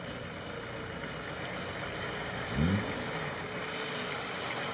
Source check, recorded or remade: recorded